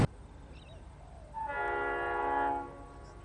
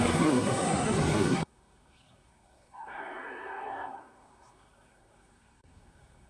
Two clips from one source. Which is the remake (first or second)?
second